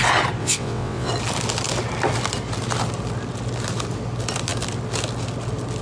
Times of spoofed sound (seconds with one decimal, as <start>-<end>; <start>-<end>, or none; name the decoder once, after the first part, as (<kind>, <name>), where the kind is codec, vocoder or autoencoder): 0.4-1.1 (vocoder, WaveNeXt)